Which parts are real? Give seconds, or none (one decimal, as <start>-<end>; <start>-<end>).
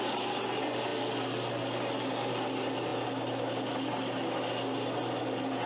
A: 0.0-5.7